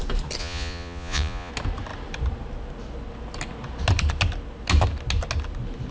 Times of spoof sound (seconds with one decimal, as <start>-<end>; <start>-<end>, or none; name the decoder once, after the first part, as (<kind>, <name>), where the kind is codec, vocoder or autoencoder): 0.4-1.5 (vocoder, Vocos)